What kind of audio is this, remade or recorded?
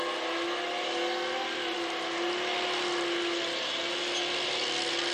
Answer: recorded